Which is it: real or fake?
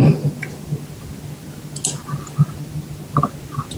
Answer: real